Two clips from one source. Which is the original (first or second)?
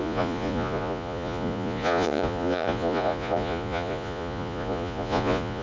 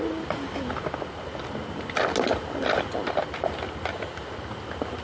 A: second